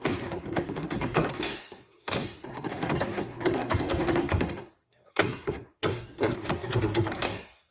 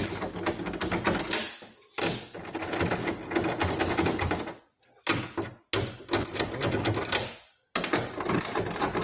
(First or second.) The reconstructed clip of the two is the first